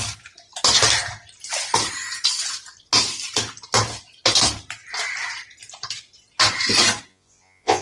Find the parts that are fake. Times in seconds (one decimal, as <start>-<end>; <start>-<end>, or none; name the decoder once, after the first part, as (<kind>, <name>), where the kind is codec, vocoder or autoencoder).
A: 7.1-7.8 (vocoder, Vocos)

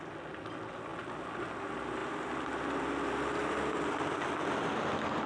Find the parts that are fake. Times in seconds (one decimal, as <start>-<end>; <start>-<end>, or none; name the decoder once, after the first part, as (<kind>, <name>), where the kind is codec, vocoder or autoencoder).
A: none